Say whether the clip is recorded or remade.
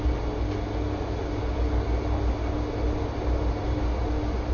recorded